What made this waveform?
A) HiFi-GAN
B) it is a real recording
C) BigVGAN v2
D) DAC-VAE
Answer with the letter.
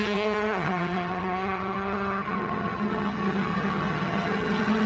A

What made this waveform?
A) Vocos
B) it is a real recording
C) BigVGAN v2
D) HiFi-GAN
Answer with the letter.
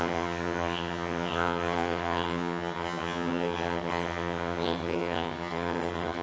D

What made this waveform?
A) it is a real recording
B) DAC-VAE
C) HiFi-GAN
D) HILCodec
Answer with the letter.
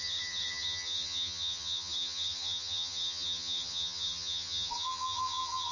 C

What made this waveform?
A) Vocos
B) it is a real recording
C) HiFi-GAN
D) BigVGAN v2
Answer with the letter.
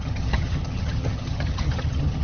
C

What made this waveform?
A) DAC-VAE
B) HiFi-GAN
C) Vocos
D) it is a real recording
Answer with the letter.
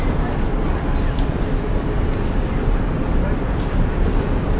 D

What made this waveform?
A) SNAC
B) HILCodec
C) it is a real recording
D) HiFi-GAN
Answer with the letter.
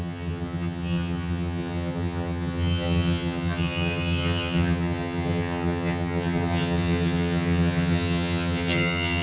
D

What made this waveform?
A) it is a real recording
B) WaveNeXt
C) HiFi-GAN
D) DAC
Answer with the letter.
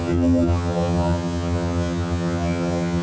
C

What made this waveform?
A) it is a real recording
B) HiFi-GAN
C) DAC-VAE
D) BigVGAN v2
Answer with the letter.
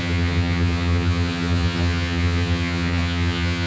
B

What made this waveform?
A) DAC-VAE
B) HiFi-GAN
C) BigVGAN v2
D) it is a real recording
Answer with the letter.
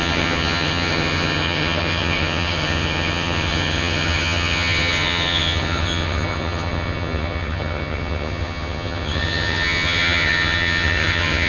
B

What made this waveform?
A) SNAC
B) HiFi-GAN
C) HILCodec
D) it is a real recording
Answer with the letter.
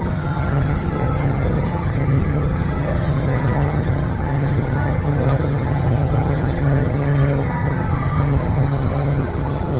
B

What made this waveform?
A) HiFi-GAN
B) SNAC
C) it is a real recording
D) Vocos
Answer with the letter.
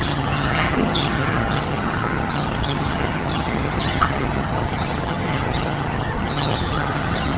A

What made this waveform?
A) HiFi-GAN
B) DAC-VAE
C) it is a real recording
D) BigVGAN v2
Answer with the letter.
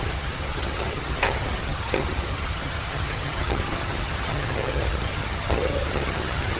A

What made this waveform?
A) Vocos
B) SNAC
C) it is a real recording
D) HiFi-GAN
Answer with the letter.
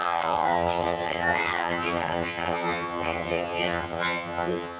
D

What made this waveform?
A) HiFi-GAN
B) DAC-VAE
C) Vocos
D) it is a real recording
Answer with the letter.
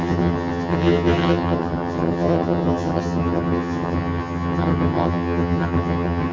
A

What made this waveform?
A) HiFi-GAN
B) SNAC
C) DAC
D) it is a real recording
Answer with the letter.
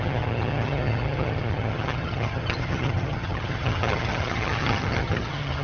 A